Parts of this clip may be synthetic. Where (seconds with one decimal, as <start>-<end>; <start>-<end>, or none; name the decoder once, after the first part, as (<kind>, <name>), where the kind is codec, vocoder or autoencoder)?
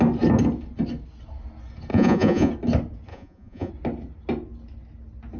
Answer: 1.9-2.5 (vocoder, Vocos); 3.1-3.7